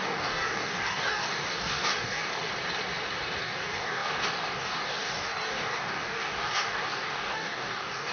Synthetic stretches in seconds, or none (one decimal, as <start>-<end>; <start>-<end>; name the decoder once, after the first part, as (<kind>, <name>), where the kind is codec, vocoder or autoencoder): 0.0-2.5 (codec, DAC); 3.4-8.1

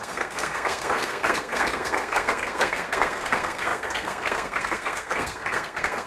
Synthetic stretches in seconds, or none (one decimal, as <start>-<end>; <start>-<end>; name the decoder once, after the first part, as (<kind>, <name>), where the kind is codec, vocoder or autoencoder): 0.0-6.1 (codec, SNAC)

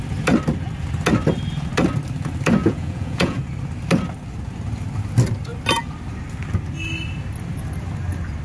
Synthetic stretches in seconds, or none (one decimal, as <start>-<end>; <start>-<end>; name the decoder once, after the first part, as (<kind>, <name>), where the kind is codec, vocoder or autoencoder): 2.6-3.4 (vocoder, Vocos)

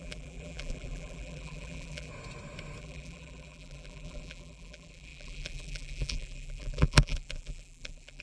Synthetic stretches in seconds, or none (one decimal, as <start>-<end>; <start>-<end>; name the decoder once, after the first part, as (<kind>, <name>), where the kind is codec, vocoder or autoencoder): 0.0-2.1 (vocoder, BigVGAN v2); 2.8-8.2